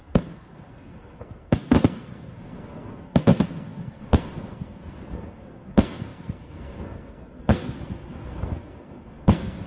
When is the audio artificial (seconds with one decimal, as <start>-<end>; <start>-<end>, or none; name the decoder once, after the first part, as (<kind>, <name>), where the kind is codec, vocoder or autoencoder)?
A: 0.0-9.7 (codec, SNAC)

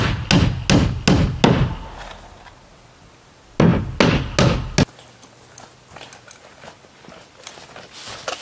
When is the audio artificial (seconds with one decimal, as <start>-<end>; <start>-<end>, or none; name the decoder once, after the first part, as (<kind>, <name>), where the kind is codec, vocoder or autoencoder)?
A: none